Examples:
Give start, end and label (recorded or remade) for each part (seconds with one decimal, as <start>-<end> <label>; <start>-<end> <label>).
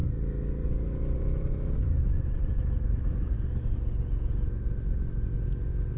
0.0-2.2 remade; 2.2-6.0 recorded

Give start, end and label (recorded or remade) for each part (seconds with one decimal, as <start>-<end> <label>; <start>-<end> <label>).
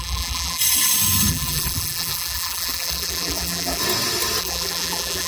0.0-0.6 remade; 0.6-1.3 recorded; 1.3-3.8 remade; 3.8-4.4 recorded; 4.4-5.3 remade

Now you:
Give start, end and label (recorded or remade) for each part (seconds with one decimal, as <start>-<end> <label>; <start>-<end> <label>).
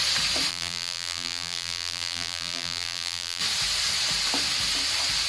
0.0-0.5 recorded; 0.5-3.4 remade; 3.4-5.3 recorded